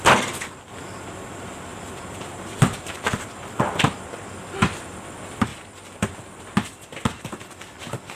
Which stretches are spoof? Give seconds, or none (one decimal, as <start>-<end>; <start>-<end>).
none